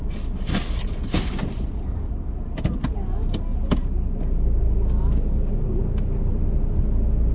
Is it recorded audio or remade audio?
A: recorded